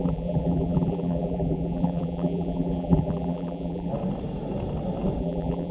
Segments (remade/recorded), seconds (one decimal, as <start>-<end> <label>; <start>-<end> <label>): 0.0-3.9 remade; 3.9-5.2 recorded; 5.2-5.7 remade

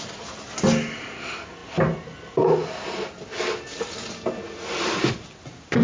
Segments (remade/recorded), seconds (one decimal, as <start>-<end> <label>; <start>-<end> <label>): 0.0-5.8 recorded

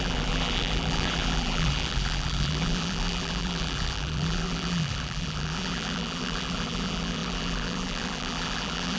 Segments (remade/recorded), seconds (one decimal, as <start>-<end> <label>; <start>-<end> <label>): 0.0-9.0 remade

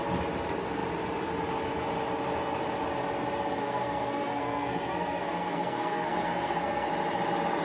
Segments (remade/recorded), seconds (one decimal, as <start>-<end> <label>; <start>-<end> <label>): 0.0-3.6 recorded; 3.6-6.9 remade; 6.9-7.6 recorded

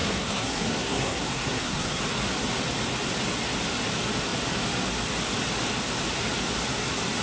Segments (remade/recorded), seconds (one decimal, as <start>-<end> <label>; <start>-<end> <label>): 0.0-2.0 remade; 2.0-7.2 recorded

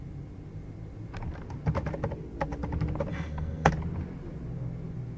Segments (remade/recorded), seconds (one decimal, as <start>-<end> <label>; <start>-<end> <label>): 0.0-3.1 recorded; 3.1-3.7 remade; 3.7-5.2 recorded

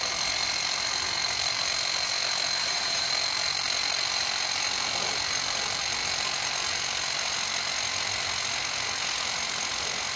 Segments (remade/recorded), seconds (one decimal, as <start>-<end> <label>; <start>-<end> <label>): 0.0-2.6 recorded; 2.6-3.1 remade; 3.1-10.2 recorded